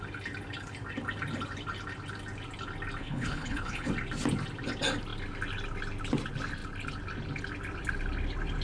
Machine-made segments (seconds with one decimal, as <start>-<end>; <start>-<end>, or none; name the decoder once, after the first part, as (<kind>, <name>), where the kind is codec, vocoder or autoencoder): 3.0-3.9 (codec, HILCodec)